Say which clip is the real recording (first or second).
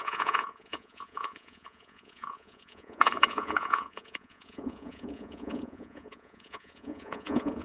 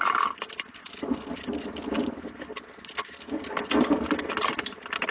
second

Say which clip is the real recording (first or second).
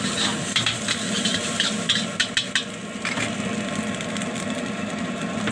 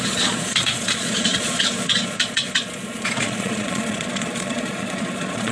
first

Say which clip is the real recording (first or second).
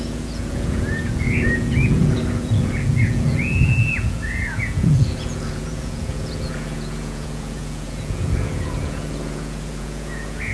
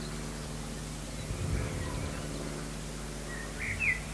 second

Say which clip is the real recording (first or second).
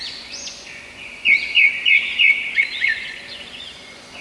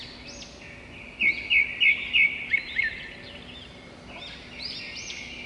second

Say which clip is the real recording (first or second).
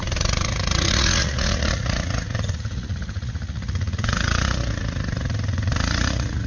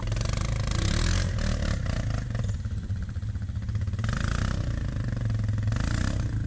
second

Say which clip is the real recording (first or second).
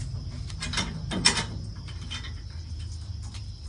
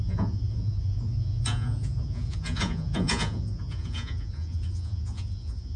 first